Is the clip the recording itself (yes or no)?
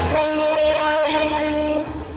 no